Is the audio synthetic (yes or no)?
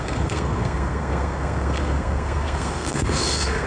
yes